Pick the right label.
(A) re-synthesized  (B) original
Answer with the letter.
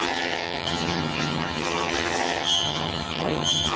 A